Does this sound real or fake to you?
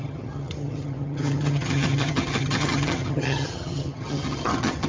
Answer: fake